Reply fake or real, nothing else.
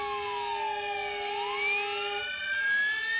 real